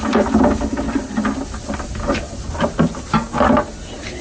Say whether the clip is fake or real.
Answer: real